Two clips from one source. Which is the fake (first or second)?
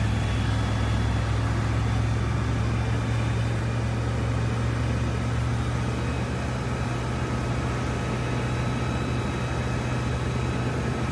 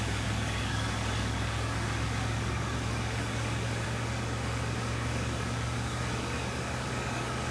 second